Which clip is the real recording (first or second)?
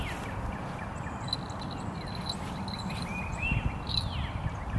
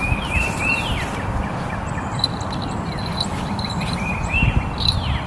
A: first